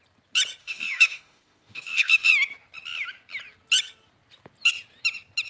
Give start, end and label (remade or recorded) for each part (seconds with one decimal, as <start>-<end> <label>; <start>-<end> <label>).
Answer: 0.0-0.6 recorded; 0.6-2.3 remade; 2.3-5.5 recorded